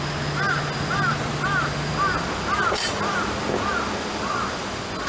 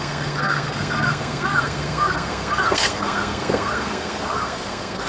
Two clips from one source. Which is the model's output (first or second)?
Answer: second